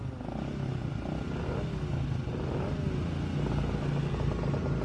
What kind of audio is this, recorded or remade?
recorded